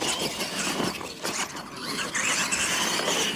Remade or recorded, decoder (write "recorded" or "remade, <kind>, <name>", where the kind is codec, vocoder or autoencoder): recorded